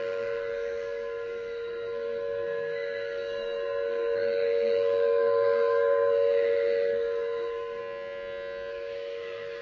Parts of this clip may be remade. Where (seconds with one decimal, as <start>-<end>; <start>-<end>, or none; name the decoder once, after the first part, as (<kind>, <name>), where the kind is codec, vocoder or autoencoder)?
0.0-7.8 (codec, SNAC); 8.7-9.6